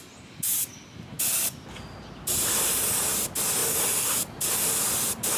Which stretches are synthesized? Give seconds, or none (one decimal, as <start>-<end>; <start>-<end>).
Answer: none